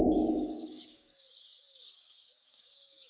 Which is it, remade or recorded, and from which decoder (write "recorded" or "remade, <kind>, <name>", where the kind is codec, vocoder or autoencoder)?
remade, codec, DAC